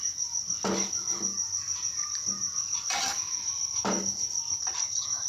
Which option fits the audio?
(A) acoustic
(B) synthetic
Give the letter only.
A